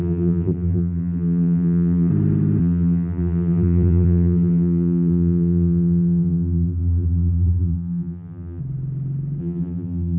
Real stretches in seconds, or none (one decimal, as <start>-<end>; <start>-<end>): 2.1-2.6; 8.6-9.4